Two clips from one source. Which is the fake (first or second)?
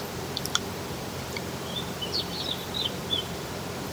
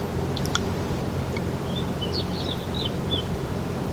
first